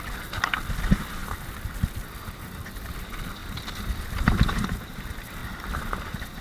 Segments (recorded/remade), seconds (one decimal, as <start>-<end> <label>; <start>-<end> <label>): 0.0-1.2 recorded; 1.2-2.9 remade; 2.9-3.4 recorded; 3.4-4.1 remade; 4.1-5.4 recorded; 5.4-6.0 remade; 6.0-6.4 recorded